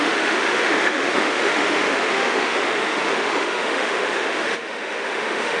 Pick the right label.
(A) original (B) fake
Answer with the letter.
B